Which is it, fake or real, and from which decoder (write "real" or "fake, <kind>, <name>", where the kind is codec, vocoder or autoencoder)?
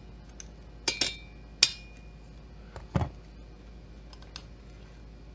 real